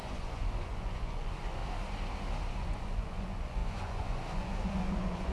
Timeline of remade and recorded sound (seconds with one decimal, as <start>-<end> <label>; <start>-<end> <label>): 0.0-1.6 remade; 1.6-2.5 recorded; 2.5-5.3 remade